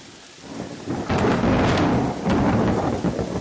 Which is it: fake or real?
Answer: fake